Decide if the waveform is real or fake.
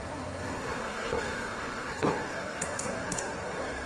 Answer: fake